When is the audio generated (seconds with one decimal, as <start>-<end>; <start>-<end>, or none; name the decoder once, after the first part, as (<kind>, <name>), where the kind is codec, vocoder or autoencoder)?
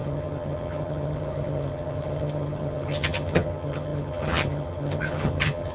0.0-5.7 (vocoder, HiFi-GAN)